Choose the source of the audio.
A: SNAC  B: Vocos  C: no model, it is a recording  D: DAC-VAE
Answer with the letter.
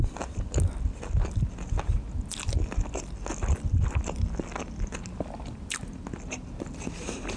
C